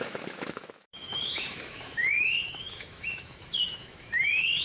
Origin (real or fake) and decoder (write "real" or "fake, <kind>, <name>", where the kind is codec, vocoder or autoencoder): fake, autoencoder, DAC-VAE